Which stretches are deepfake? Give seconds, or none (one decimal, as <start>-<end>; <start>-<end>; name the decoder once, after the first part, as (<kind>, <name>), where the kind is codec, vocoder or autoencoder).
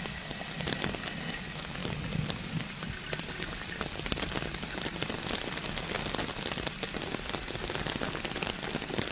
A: 0.0-1.8 (vocoder, BigVGAN v2); 2.5-4.9; 7.4-9.1